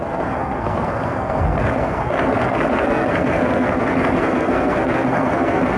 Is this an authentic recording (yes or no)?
no